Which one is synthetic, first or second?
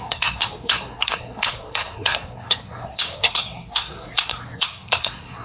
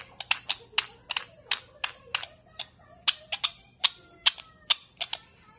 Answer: first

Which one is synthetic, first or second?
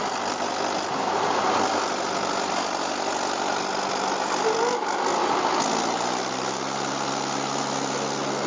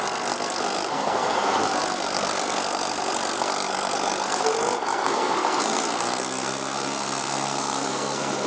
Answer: second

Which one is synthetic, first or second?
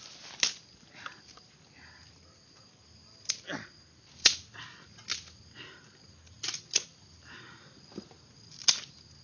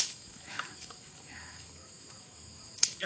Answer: second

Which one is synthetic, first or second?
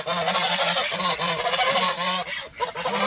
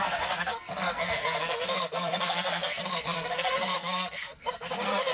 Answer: second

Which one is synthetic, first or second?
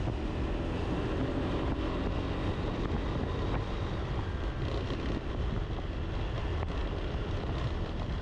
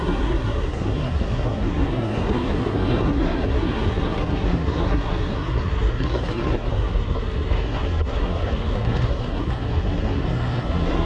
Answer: second